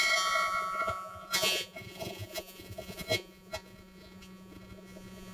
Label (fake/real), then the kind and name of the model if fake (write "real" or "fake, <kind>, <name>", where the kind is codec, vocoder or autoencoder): fake, vocoder, Vocos